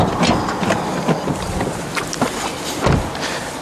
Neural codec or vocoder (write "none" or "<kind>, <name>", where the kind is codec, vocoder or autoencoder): none